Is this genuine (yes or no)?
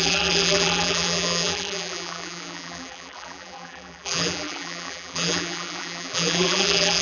no